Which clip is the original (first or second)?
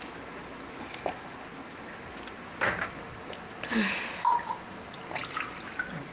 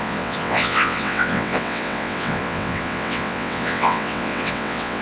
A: first